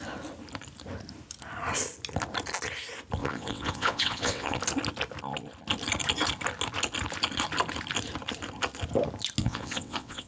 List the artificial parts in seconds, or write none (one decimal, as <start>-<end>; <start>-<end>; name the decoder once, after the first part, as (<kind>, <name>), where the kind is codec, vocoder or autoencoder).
3.2-4.6 (vocoder, WaveNeXt); 9.4-10.3

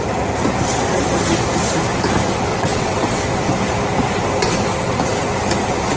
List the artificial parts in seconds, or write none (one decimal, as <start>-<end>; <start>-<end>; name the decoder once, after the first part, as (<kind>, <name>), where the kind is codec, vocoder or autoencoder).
2.5-3.2 (vocoder, WaveNeXt)